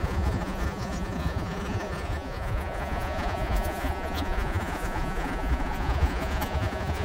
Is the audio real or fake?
fake